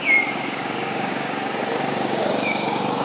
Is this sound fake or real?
fake